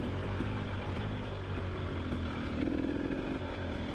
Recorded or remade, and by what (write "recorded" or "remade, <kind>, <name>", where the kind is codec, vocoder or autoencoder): recorded